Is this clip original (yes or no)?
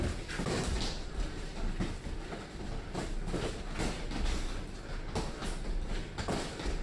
yes